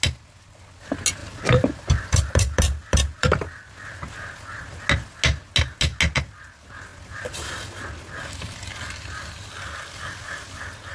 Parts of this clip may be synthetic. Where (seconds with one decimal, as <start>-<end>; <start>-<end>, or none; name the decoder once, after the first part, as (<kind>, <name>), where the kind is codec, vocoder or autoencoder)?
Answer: 1.2-3.7 (vocoder, BigVGAN v2); 6.9-7.8